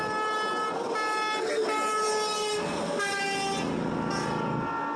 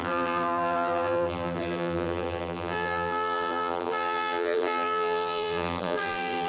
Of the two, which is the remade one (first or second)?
second